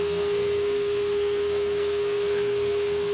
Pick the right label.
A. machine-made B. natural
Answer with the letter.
A